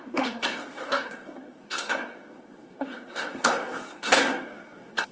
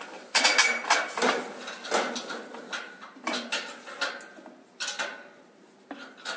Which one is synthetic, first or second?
first